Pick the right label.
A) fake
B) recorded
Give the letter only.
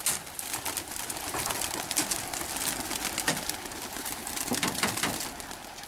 B